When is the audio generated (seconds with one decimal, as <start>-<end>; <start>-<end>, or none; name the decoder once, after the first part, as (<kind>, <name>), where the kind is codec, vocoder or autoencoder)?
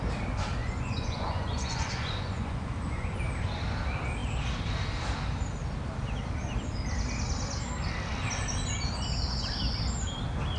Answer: 0.6-3.2 (vocoder, Vocos)